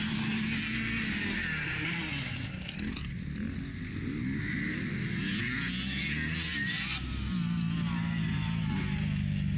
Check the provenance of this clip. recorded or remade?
recorded